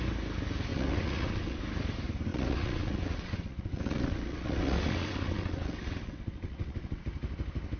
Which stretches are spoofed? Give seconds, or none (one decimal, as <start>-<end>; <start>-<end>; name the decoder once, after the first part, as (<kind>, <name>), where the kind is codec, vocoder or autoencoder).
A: 0.7-1.6 (vocoder, WaveNeXt); 2.3-7.0